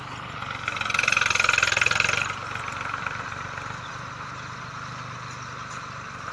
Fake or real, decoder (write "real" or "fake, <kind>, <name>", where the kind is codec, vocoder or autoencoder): fake, vocoder, BigVGAN v2